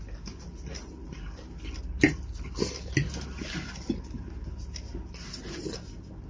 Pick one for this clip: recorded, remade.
recorded